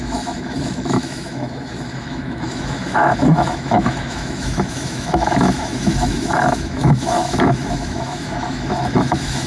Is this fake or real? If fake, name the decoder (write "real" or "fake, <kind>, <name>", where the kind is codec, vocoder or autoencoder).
fake, autoencoder, DAC-VAE